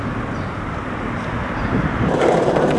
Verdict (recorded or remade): recorded